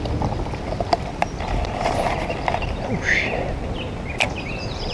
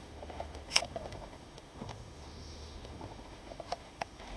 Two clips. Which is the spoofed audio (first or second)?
second